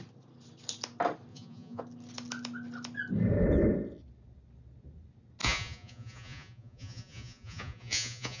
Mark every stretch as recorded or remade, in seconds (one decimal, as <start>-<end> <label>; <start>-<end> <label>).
0.0-1.3 recorded; 1.3-1.8 remade; 1.8-5.4 recorded; 5.4-8.4 remade